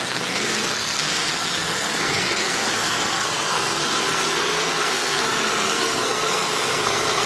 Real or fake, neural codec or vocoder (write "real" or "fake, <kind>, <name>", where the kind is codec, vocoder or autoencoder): fake, codec, SNAC